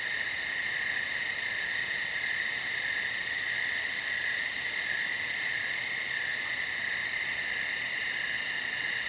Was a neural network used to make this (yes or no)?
no